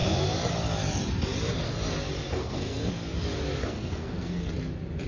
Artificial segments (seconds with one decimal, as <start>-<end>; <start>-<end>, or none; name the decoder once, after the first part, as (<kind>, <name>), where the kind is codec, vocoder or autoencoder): 2.3-2.9 (codec, SNAC); 3.6-4.5